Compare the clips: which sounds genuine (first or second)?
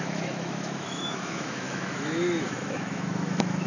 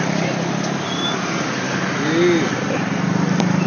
second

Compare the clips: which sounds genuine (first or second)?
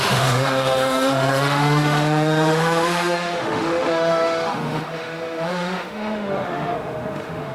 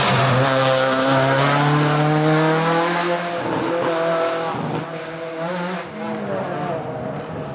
second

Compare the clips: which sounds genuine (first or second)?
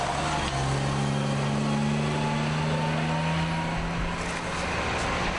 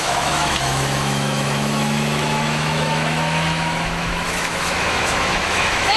first